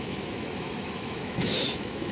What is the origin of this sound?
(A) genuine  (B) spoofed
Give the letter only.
B